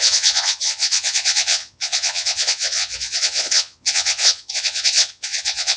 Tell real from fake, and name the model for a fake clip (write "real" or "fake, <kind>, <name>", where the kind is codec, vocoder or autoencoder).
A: fake, vocoder, Vocos